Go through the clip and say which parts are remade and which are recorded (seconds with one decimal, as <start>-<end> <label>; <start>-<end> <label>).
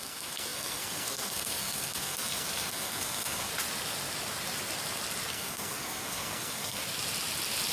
0.0-3.5 remade; 3.5-5.3 recorded; 5.3-6.8 remade; 6.8-7.7 recorded